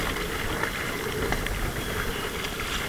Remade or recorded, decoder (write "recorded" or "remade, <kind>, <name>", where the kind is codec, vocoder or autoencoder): recorded